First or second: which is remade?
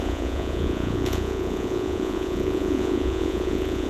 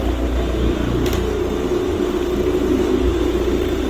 first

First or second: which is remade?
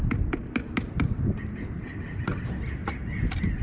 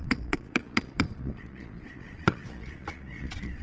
second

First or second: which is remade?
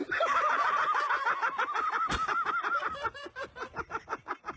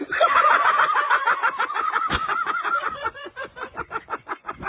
second